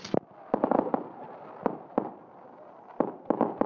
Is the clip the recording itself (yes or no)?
yes